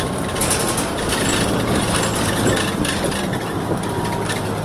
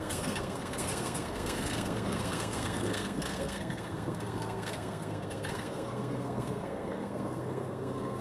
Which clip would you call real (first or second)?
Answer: first